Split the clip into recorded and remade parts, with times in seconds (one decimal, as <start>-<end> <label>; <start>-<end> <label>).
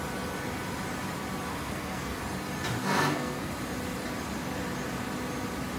0.0-1.5 recorded; 1.5-2.2 remade; 2.2-2.8 recorded; 2.8-3.5 remade; 3.5-5.8 recorded